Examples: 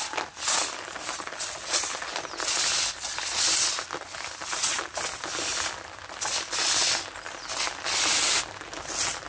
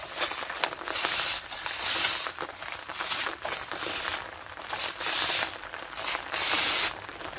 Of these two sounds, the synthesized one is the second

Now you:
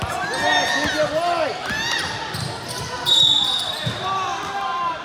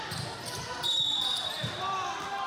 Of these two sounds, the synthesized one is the second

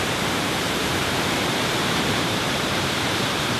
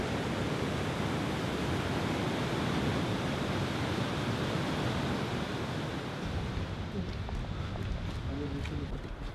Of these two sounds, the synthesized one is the first